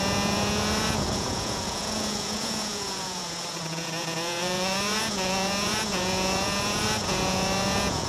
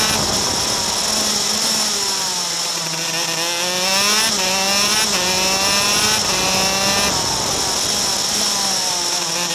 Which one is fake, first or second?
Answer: first